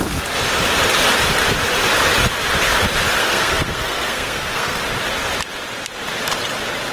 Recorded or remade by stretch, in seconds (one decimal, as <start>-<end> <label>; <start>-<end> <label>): 0.0-3.2 recorded; 3.2-4.8 remade; 4.8-6.9 recorded